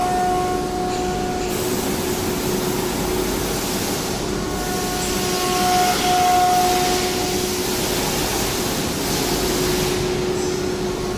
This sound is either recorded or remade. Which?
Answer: recorded